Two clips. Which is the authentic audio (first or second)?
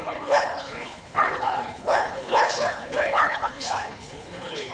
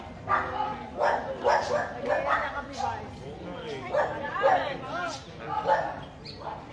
second